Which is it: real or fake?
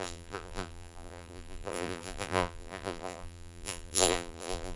fake